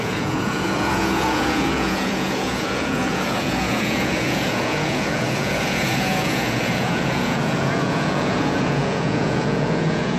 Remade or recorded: remade